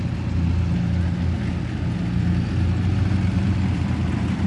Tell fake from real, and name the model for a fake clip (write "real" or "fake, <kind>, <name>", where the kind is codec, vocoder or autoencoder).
real